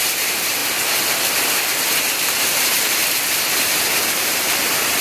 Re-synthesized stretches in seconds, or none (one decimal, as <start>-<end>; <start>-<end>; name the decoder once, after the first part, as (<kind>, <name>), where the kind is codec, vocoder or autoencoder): 0.0-3.0 (vocoder, BigVGAN v2); 3.7-5.0